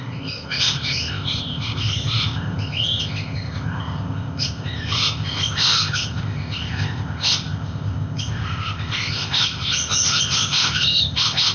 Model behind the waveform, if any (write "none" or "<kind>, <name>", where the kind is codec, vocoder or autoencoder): codec, ZipCodec